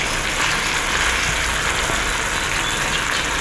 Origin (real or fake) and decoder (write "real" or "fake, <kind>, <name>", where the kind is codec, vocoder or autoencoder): real